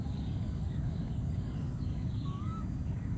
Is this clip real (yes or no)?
no